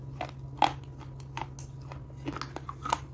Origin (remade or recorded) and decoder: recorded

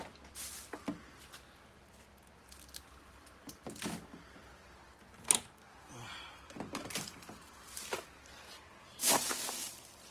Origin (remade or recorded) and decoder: recorded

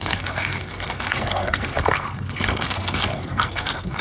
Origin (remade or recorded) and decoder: remade, codec, SNAC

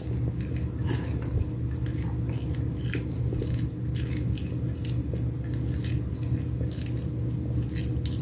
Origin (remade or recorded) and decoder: recorded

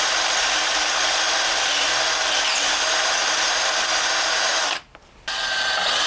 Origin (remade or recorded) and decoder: recorded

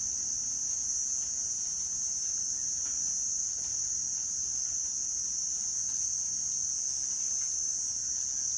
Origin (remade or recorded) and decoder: recorded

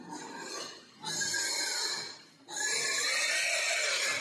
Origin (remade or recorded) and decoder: recorded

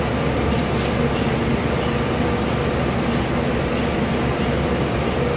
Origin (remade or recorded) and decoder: recorded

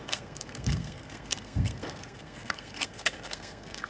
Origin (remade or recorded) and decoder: remade, codec, SNAC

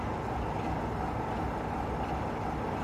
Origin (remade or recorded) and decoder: recorded